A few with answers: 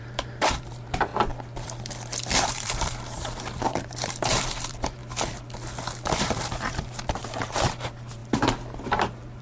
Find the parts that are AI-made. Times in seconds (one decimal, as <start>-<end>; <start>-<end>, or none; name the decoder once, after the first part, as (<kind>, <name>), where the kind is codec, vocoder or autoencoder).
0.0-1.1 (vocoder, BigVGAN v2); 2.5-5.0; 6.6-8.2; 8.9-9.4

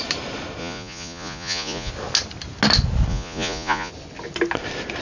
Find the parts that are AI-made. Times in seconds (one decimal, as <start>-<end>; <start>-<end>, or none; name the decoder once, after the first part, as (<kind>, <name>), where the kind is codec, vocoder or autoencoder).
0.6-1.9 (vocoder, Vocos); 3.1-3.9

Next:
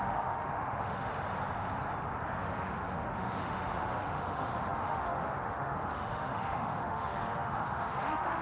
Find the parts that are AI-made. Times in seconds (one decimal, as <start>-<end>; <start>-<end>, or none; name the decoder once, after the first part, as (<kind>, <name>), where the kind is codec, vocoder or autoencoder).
0.0-1.1 (autoencoder, DAC-VAE); 2.4-8.4

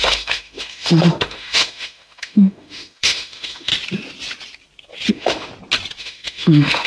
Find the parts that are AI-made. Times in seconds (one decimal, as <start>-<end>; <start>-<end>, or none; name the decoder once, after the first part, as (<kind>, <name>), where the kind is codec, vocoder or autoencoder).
0.0-3.7 (autoencoder, DAC-VAE); 5.1-5.5; 6.0-6.9